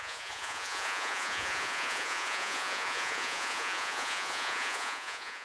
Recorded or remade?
remade